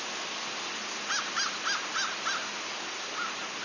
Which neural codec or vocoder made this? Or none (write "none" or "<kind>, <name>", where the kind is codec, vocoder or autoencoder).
none